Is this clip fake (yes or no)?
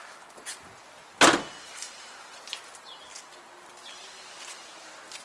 no